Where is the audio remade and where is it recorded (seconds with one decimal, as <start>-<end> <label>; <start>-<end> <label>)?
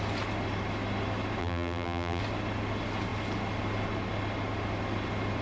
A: 0.0-1.4 recorded; 1.4-2.2 remade; 2.2-5.4 recorded